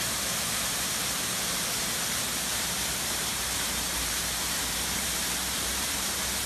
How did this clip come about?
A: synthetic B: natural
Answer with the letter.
A